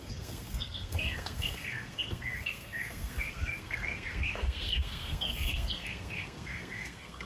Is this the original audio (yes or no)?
no